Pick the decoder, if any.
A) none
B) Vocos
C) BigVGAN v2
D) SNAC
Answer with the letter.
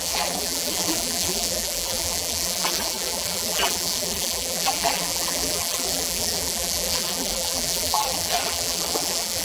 C